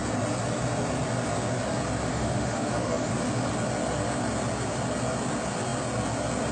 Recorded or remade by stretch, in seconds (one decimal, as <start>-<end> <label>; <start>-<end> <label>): 0.0-2.1 recorded; 2.1-3.1 remade; 3.1-6.5 recorded